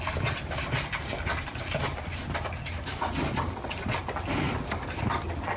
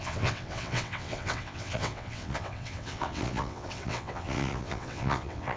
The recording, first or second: first